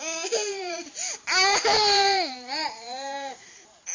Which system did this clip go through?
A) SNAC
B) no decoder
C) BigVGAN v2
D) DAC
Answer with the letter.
C